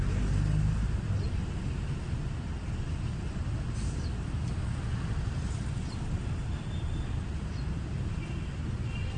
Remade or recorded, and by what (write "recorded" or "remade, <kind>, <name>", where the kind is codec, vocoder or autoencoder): recorded